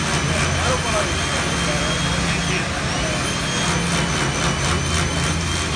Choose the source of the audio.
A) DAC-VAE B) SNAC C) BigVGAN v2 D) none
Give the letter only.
D